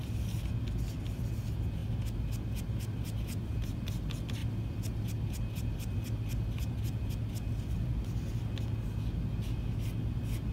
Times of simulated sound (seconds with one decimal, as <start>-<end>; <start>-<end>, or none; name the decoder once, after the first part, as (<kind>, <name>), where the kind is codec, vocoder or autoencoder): none